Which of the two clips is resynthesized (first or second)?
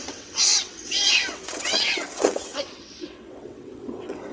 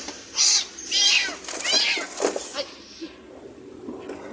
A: first